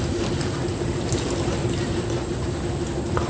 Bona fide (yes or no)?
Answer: yes